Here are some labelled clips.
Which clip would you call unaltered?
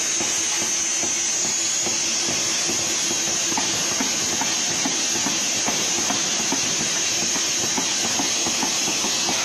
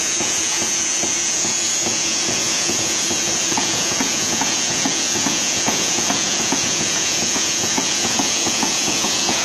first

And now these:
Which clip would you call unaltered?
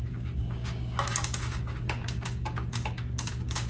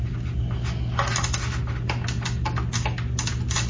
second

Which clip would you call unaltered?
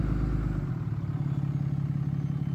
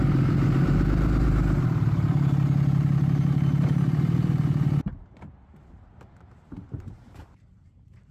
first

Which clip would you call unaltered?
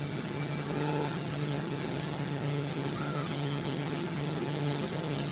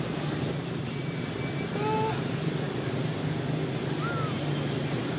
second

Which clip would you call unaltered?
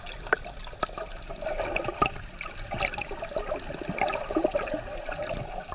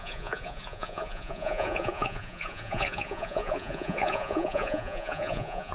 first